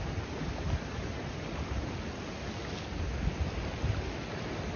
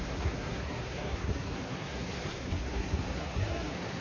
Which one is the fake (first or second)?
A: second